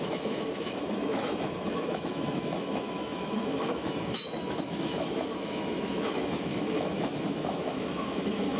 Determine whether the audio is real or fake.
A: fake